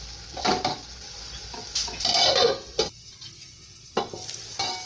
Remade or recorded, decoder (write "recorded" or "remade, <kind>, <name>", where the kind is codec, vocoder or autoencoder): recorded